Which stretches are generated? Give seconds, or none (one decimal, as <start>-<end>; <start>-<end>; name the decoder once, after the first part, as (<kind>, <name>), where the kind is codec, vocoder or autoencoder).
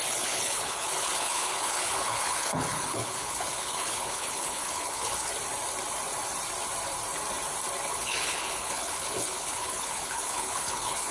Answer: 0.0-5.3 (codec, HILCodec); 7.9-11.1